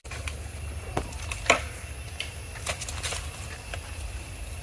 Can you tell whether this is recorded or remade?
recorded